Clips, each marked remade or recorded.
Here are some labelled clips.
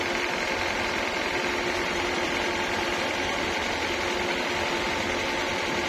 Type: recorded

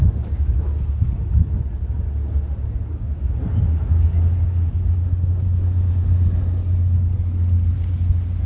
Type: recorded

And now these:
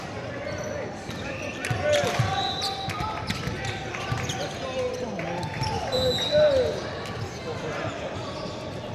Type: recorded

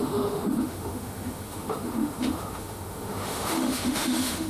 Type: remade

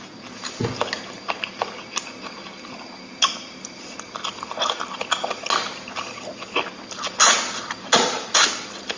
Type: recorded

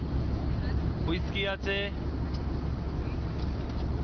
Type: recorded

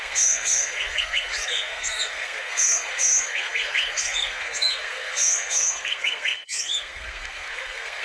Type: remade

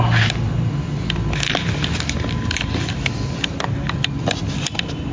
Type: recorded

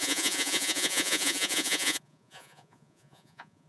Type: remade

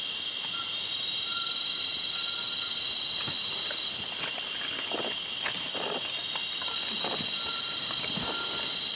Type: recorded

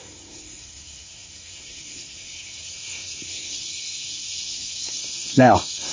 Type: remade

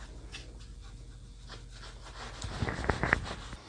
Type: recorded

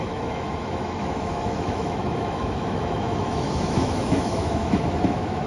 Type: remade